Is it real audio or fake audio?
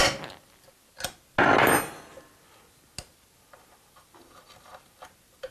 real